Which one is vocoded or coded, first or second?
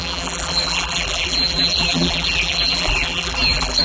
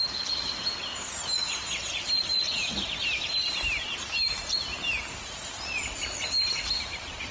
first